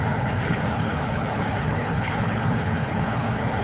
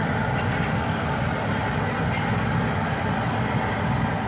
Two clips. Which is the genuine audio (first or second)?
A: second